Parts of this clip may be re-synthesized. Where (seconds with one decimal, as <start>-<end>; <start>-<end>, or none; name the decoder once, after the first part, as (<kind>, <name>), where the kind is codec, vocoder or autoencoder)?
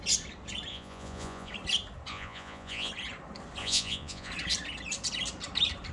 0.7-1.5 (vocoder, Vocos); 2.1-2.9; 3.6-4.3